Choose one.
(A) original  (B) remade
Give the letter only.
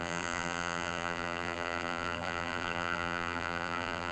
B